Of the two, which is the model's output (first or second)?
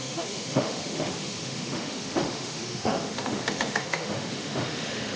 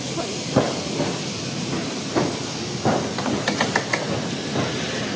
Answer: first